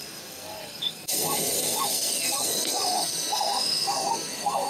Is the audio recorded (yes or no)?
no